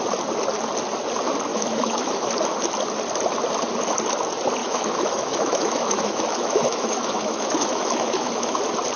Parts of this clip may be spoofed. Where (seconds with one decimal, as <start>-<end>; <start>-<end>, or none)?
1.5-2.3; 4.6-8.6